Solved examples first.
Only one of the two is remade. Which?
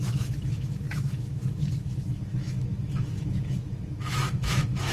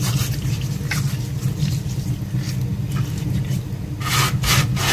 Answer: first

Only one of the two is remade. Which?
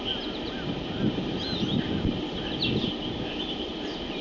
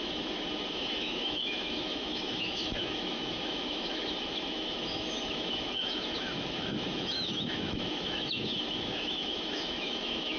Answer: second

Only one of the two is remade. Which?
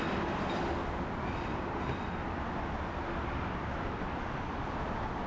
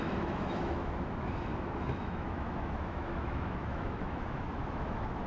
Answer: second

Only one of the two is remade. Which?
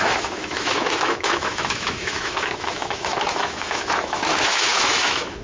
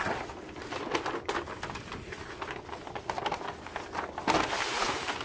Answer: first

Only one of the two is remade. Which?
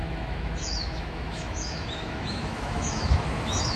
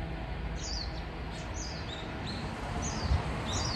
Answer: first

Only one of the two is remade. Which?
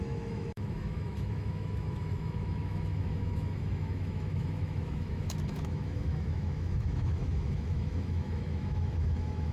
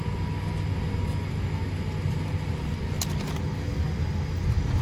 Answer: first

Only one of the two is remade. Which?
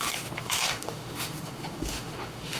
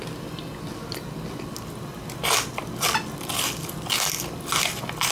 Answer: first